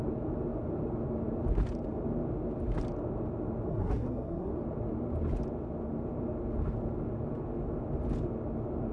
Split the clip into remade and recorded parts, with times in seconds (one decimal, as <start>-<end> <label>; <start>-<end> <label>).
0.0-3.7 recorded; 3.7-4.5 remade; 4.5-8.9 recorded